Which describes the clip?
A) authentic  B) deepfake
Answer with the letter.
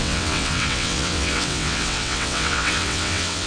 B